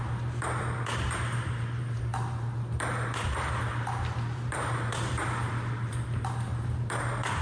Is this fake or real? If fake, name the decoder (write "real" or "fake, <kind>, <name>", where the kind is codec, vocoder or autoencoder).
fake, vocoder, BigVGAN v2